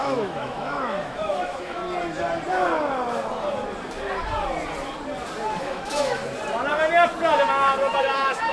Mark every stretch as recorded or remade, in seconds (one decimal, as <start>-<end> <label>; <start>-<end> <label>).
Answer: 0.0-1.8 remade; 1.8-5.6 recorded; 5.6-6.2 remade; 6.2-8.0 recorded; 8.0-8.5 remade